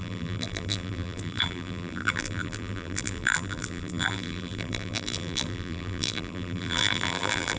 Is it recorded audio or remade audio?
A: remade